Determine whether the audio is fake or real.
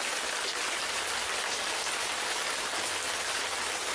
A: real